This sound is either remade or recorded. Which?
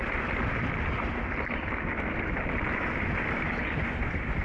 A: recorded